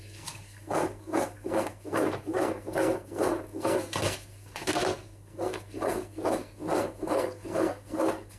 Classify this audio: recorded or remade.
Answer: remade